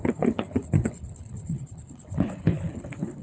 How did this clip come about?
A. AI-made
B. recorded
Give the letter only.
A